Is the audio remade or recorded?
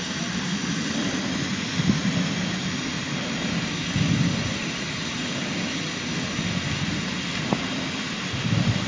recorded